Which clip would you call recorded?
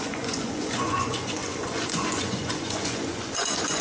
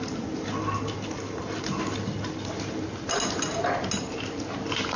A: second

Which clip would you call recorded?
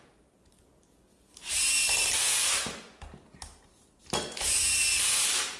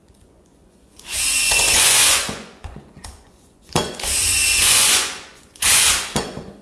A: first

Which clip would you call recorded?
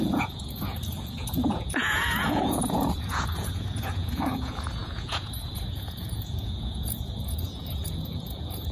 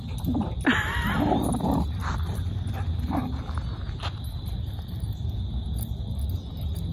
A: second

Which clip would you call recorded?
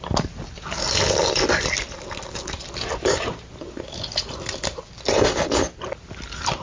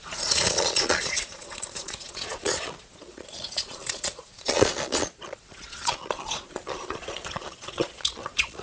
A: first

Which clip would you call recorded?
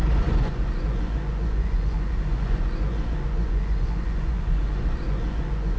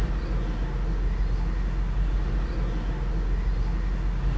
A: second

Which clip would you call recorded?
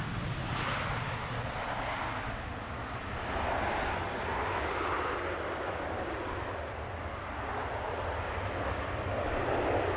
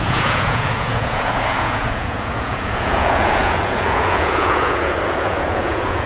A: first